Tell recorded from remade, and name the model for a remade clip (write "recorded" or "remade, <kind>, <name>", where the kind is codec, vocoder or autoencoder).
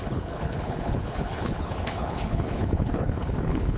remade, codec, HILCodec